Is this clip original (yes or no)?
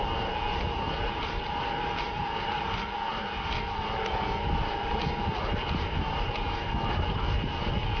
yes